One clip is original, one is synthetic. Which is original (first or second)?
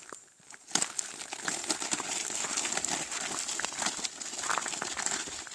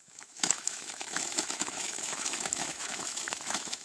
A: first